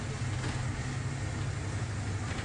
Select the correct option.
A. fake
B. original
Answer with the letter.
B